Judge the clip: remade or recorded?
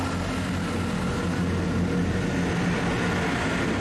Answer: recorded